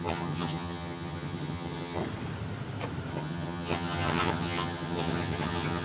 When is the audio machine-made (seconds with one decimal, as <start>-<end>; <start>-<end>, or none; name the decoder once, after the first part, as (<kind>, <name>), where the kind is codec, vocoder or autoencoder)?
0.0-2.0 (vocoder, HiFi-GAN); 3.1-5.8